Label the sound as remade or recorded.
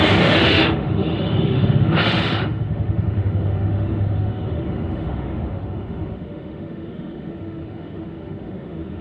remade